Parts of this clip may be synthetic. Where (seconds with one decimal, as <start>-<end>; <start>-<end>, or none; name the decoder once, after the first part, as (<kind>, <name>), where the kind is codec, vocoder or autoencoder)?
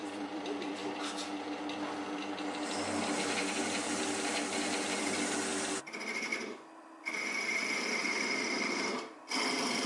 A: 0.0-0.8 (vocoder, BigVGAN v2); 5.8-6.3; 7.8-9.9